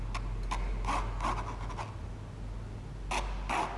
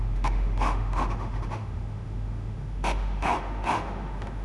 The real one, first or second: first